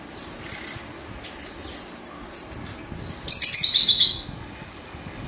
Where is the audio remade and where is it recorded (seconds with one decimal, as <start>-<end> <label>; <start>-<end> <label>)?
0.0-3.8 recorded; 3.8-5.3 remade